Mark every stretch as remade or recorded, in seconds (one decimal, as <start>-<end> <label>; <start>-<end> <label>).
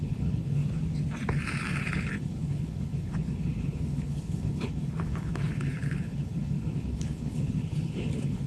0.0-0.6 remade; 0.6-1.8 recorded; 1.8-8.5 remade